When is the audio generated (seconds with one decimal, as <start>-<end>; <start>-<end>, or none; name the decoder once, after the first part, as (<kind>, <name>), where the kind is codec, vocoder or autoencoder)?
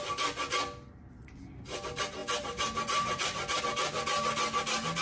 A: 2.2-3.6 (vocoder, BigVGAN v2)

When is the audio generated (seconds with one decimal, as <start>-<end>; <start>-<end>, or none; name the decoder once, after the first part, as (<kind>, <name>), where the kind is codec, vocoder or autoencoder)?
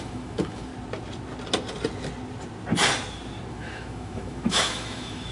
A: 0.0-0.7 (autoencoder, DAC-VAE); 3.5-5.3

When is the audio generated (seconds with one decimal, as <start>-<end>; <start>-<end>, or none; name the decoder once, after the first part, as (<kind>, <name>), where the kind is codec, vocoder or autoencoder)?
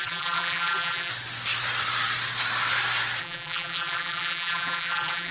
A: 0.0-1.1 (vocoder, BigVGAN v2); 3.2-5.3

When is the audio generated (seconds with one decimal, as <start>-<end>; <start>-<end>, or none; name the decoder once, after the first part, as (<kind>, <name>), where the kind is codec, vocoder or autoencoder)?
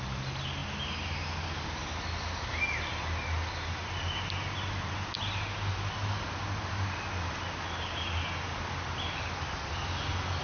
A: none